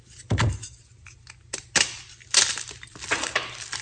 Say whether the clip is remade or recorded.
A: recorded